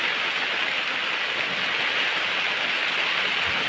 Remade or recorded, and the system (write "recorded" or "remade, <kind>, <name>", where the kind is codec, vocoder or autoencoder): recorded